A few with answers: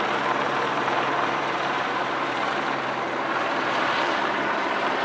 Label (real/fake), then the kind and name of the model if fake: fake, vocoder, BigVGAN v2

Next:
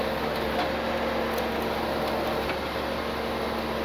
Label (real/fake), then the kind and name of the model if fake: real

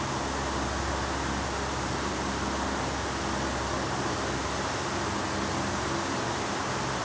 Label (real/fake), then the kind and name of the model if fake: real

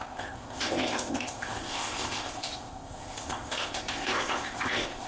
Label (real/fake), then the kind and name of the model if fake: fake, codec, ZipCodec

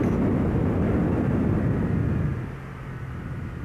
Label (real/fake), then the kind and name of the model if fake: real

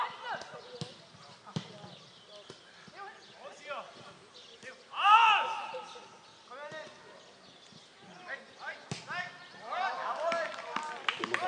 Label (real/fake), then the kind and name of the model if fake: real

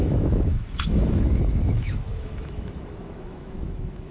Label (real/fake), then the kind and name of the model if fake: fake, autoencoder, DAC-VAE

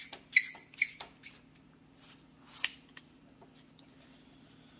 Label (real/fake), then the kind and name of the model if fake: real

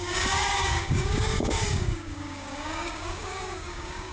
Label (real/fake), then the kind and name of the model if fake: fake, codec, DAC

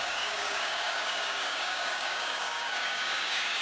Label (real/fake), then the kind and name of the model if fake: fake, codec, DAC